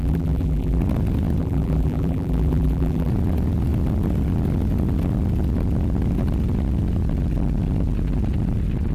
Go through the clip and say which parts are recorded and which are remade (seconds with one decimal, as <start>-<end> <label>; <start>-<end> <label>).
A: 0.0-0.8 remade; 0.8-1.4 recorded; 1.4-3.1 remade; 3.1-8.9 recorded